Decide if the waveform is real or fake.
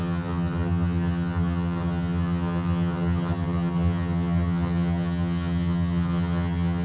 fake